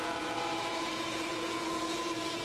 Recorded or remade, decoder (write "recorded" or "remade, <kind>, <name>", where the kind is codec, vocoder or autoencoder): remade, vocoder, Vocos